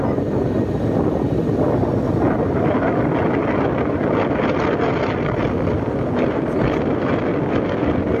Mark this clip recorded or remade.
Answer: recorded